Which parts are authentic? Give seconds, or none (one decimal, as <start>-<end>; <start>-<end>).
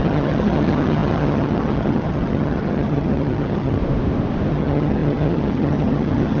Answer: 3.8-4.5